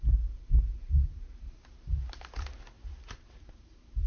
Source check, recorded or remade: remade